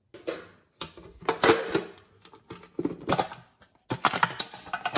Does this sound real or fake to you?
real